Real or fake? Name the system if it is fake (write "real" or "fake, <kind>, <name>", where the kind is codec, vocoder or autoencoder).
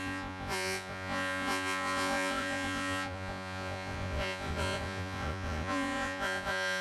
fake, vocoder, Vocos